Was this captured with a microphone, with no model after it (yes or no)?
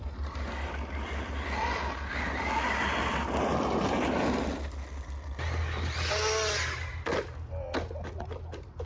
yes